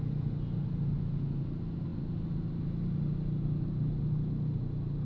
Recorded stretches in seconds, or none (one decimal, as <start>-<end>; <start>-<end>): 0.0-5.0

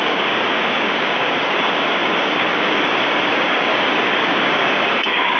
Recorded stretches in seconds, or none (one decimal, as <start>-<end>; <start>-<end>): none

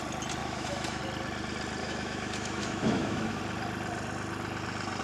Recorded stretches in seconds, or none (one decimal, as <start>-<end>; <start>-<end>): 0.0-0.4; 1.0-1.8; 3.4-5.0

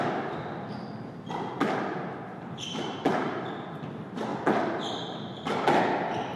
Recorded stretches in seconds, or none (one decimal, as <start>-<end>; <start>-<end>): 0.0-6.4

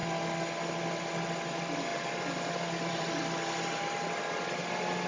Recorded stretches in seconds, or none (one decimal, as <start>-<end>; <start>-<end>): 0.0-5.1